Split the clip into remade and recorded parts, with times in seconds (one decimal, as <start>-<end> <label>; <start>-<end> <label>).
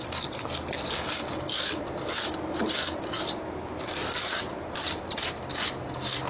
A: 0.0-6.3 recorded